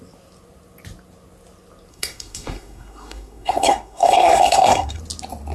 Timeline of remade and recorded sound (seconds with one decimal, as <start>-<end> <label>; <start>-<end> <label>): 0.0-1.9 recorded; 1.9-5.0 remade; 5.0-5.5 recorded